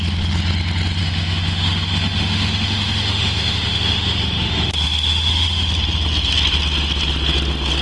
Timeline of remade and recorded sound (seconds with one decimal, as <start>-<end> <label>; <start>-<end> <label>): 0.0-1.0 recorded; 1.0-5.7 remade; 5.7-7.8 recorded